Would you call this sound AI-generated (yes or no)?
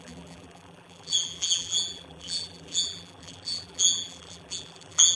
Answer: yes